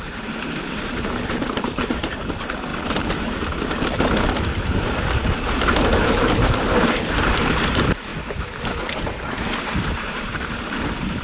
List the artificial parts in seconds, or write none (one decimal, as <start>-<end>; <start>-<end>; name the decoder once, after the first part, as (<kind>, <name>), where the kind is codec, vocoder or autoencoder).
0.0-2.7 (vocoder, BigVGAN v2); 7.1-8.1; 8.9-11.2